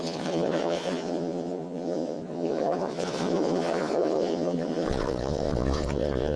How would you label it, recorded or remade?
remade